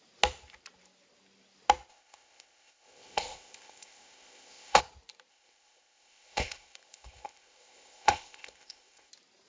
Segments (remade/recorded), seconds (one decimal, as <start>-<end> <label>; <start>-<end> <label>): 0.0-1.9 recorded; 1.9-4.8 remade; 4.8-5.3 recorded; 5.3-9.1 remade; 9.1-9.5 recorded